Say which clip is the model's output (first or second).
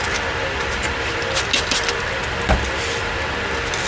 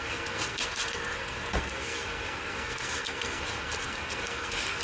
second